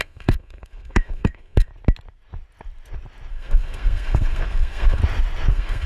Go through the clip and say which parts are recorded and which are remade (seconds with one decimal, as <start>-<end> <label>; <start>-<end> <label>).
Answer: 0.0-1.7 remade; 1.7-3.3 recorded; 3.3-5.0 remade; 5.0-5.5 recorded; 5.5-5.9 remade